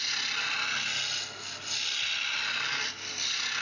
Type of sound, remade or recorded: recorded